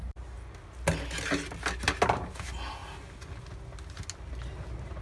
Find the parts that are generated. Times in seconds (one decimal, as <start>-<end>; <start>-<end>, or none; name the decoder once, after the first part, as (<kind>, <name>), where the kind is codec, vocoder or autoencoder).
none